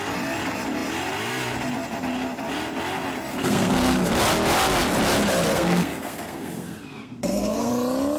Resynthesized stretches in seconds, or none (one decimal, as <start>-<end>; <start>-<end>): 3.3-4.1; 5.5-7.7